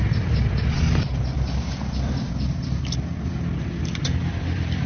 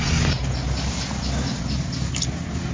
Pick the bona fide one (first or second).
second